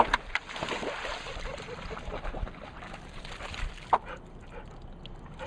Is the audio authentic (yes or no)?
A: yes